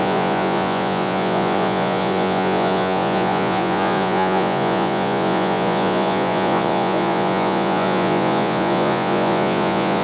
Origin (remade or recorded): remade